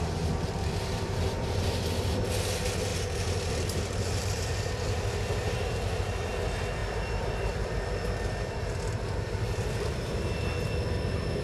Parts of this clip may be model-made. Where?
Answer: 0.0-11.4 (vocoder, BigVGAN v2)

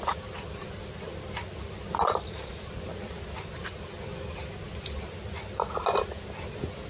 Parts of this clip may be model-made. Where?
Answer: none

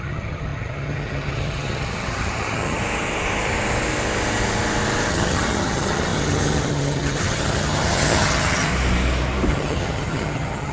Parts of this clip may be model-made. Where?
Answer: 0.0-2.8 (vocoder, HiFi-GAN); 5.1-8.7; 9.5-10.7

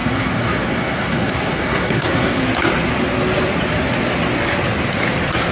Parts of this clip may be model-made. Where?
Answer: 0.0-2.4 (codec, SNAC)

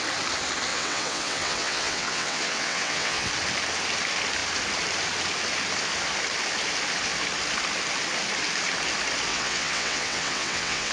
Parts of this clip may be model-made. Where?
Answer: 0.7-3.3 (vocoder, WaveNeXt); 9.3-10.9

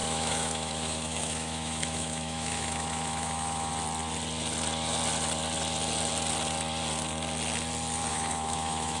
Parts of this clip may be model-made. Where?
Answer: 0.0-3.7 (autoencoder, DAC-VAE); 8.1-9.0

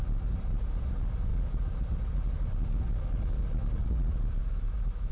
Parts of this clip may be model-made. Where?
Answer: none

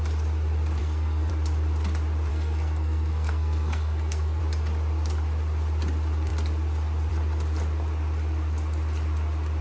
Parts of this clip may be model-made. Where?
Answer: 0.8-1.3 (codec, SNAC); 2.3-4.4